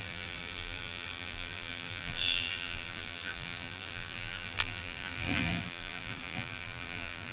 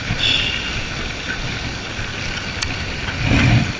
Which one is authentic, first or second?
second